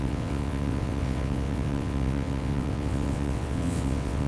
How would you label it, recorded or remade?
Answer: remade